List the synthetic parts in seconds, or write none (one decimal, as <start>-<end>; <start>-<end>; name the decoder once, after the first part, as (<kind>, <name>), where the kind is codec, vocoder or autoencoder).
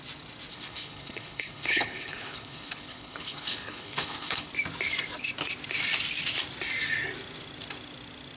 0.5-4.5 (codec, HILCodec)